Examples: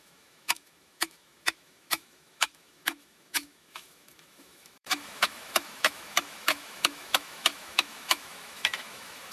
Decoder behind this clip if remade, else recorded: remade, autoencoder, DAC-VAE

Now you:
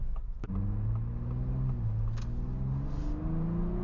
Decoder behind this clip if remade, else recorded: recorded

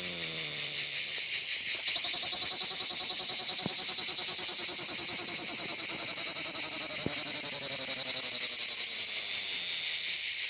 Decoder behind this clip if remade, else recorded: recorded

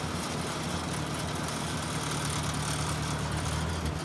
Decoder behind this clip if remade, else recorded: recorded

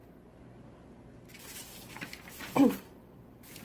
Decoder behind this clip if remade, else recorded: recorded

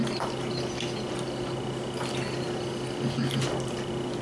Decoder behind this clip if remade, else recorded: recorded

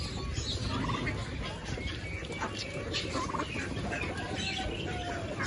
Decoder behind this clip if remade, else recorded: recorded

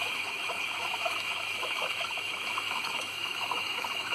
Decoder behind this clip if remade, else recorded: remade, autoencoder, DAC-VAE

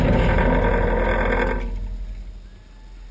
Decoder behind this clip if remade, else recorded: recorded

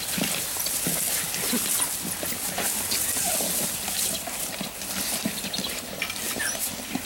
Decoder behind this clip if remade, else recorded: recorded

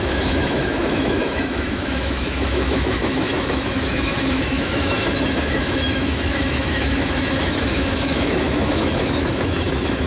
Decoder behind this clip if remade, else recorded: remade, autoencoder, DAC-VAE